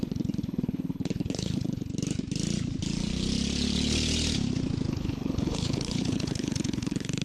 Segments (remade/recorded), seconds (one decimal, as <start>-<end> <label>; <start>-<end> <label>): 0.0-1.9 remade; 1.9-4.9 recorded; 4.9-7.2 remade

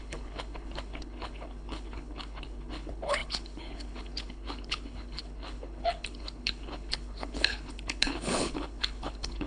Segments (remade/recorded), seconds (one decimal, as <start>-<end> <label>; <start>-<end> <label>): 0.0-9.5 remade

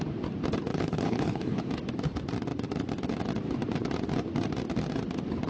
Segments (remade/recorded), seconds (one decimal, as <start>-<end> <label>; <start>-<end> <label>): 0.0-0.7 recorded; 0.7-1.6 remade; 1.6-5.5 recorded